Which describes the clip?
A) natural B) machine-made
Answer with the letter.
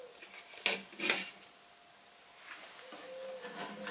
A